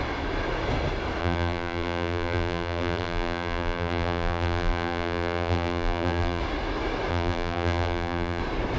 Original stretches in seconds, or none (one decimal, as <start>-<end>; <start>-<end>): 0.0-1.2; 6.4-7.1; 8.4-8.8